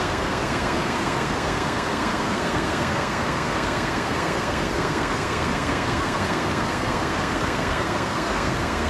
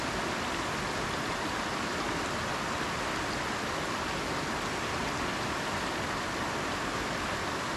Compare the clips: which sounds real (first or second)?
second